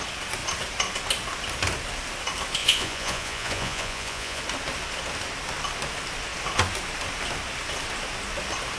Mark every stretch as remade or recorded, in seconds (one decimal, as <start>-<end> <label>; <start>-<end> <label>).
0.0-2.6 recorded; 2.6-4.4 remade; 4.4-8.8 recorded